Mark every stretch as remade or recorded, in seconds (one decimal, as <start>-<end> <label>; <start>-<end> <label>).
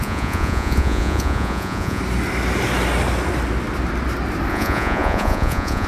0.0-2.0 remade; 2.0-4.5 recorded; 4.5-5.9 remade